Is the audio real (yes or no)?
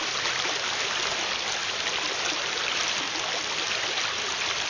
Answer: yes